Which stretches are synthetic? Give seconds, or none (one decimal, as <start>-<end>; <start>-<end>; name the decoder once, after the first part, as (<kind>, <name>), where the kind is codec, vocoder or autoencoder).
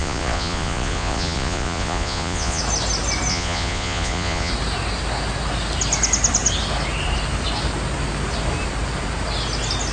0.0-2.6 (vocoder, Vocos); 3.3-4.5